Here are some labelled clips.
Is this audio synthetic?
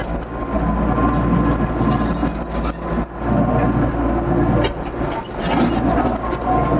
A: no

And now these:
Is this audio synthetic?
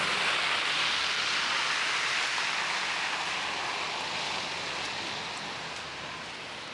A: no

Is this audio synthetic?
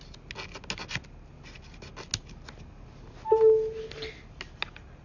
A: no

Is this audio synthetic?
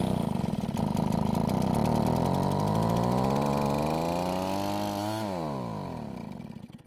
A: no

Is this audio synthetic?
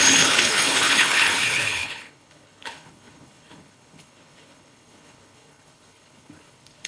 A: yes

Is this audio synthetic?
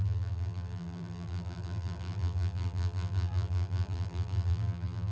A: yes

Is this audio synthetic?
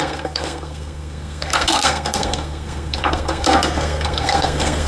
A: yes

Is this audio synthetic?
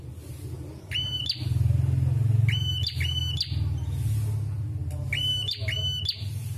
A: no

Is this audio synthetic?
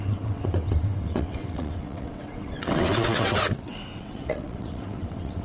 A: yes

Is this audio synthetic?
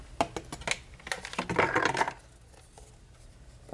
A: no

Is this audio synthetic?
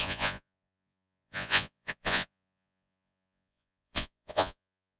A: yes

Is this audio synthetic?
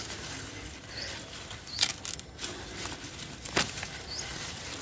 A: no